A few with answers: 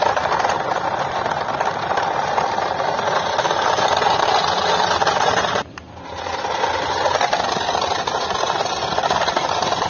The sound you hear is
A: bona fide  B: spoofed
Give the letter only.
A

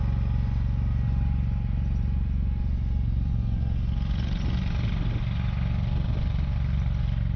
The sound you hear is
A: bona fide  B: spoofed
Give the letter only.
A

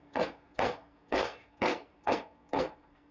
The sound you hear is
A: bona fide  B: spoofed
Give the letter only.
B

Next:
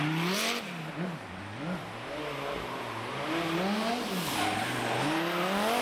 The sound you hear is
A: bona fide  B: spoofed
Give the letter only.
A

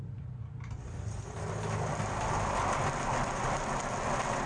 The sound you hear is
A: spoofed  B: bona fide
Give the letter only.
B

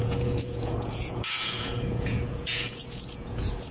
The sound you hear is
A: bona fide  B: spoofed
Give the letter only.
B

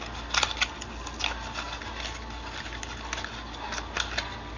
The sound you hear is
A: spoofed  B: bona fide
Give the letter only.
B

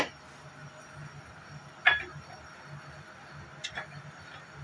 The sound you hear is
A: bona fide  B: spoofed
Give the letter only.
A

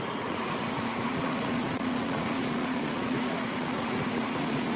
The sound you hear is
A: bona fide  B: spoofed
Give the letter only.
B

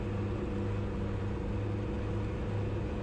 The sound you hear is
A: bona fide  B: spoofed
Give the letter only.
A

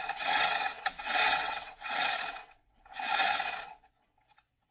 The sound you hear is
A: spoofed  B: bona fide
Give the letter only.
A